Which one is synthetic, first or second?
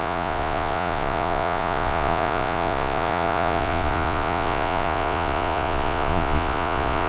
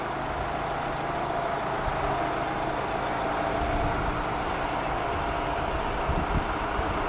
first